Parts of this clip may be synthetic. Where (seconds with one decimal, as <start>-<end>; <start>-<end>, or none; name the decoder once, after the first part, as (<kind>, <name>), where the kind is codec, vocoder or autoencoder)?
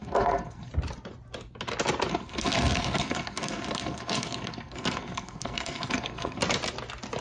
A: 0.0-0.7 (codec, SNAC); 2.1-6.4